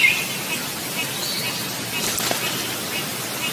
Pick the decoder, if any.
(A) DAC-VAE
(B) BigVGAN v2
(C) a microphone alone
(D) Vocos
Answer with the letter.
C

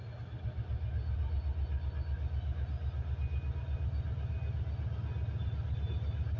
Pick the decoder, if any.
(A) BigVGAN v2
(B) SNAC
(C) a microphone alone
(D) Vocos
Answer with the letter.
C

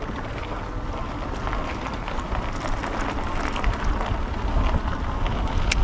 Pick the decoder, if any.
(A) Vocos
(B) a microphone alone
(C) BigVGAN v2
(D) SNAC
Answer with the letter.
B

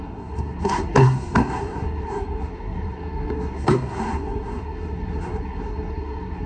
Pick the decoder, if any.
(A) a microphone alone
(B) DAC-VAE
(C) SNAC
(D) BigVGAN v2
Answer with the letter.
C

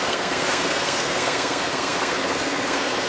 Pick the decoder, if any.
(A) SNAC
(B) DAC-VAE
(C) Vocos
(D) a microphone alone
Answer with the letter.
A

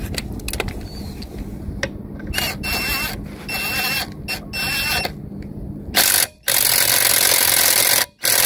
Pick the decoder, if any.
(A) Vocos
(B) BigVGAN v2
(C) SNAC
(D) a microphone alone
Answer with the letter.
D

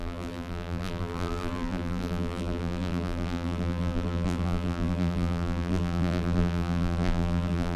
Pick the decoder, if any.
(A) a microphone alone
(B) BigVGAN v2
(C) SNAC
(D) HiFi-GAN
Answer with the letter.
B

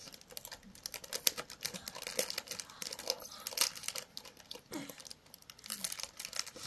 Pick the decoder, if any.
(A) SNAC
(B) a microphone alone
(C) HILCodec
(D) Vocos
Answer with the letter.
B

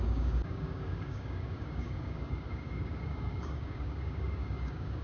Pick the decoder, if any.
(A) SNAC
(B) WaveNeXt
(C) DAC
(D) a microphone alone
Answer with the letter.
C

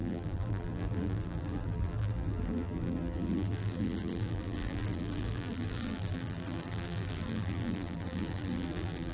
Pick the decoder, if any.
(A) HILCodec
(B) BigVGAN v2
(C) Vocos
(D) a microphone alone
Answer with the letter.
B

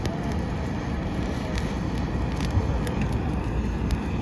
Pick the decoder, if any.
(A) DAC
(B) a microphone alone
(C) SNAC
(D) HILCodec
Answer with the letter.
B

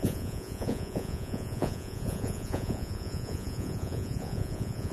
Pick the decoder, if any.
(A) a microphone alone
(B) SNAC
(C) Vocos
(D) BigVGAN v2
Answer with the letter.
C